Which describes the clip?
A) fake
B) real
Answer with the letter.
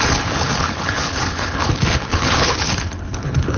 A